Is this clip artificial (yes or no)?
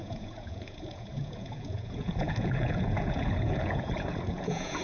yes